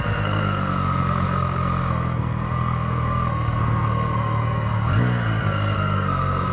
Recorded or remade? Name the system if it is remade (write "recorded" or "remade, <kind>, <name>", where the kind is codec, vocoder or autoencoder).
remade, codec, SNAC